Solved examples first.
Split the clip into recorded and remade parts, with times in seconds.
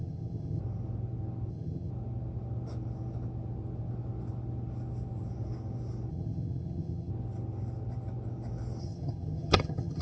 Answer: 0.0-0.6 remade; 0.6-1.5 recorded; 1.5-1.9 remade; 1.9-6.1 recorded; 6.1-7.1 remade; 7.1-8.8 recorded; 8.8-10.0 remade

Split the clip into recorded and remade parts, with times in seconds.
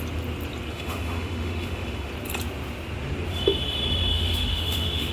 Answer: 0.0-0.7 recorded; 0.7-2.1 remade; 2.1-4.1 recorded; 4.1-5.1 remade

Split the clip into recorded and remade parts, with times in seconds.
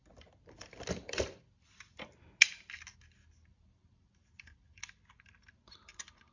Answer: 0.0-2.2 remade; 2.2-3.5 recorded; 3.5-6.3 remade